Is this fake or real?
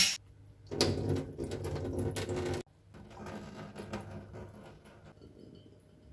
real